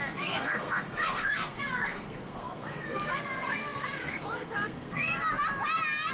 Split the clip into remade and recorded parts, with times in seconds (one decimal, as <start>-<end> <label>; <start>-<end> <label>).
0.0-5.1 remade; 5.1-6.1 recorded